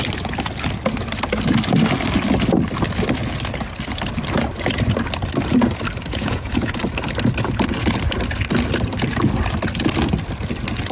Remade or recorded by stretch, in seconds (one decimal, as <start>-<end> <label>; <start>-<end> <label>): 0.0-6.1 recorded; 6.1-6.8 remade; 6.8-10.9 recorded